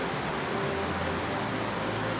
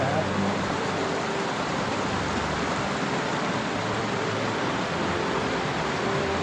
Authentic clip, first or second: first